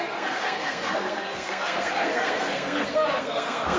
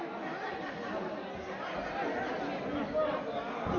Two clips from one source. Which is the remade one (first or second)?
first